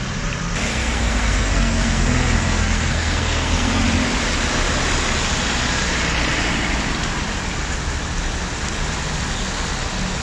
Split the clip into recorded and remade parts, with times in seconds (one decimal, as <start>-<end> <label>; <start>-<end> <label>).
0.0-0.7 recorded; 0.7-3.8 remade; 3.8-10.2 recorded